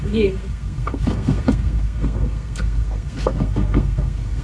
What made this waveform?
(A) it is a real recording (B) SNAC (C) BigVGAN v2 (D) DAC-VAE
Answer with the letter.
B